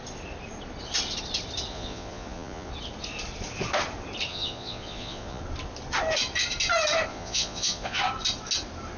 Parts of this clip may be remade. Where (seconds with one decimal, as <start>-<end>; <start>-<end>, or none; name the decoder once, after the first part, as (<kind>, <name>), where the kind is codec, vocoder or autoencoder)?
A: 1.7-2.7 (vocoder, Vocos); 4.3-5.4; 7.1-8.0